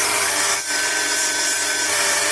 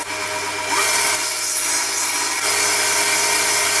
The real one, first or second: second